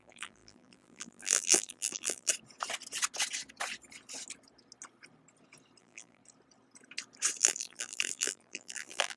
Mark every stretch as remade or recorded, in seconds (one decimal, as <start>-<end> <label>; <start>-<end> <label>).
0.0-2.3 remade; 2.3-5.8 recorded; 5.8-6.2 remade; 6.2-7.4 recorded; 7.4-9.2 remade